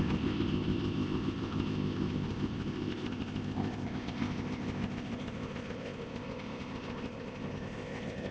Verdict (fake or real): fake